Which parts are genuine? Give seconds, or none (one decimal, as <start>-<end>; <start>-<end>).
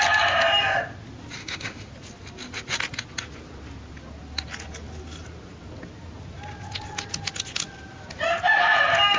0.0-1.4; 1.9-9.2